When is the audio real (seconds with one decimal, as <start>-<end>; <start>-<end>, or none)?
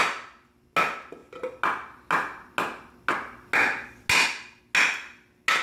0.0-5.6